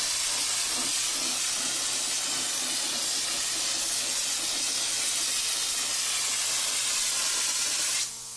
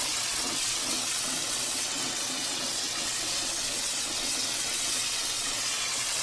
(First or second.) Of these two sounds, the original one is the first